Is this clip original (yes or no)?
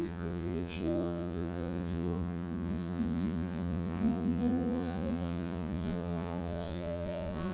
no